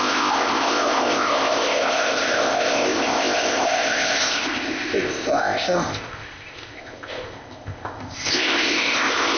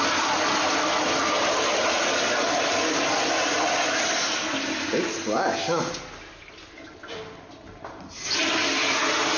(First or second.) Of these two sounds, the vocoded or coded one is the first